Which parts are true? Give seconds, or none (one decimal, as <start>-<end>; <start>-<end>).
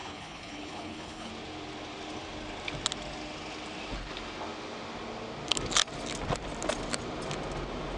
1.3-8.0